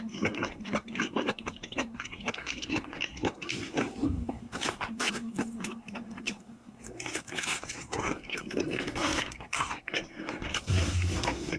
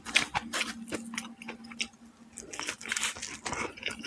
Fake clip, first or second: first